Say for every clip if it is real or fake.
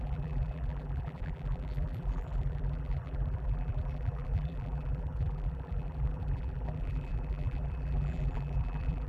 fake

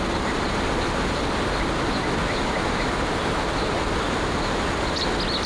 real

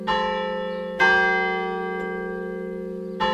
real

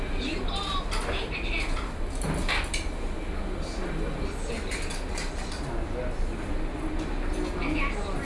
real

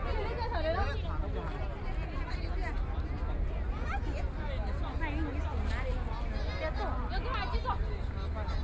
real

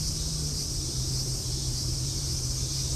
fake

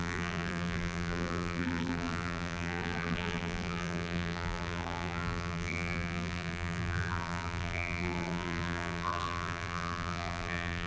fake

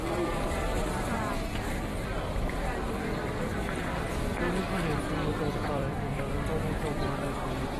fake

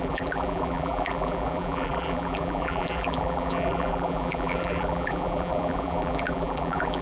fake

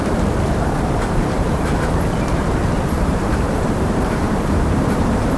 fake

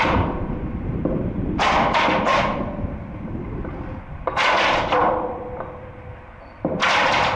fake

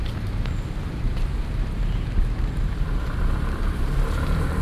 fake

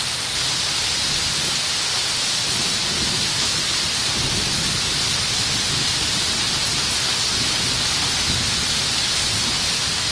real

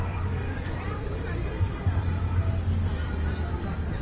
fake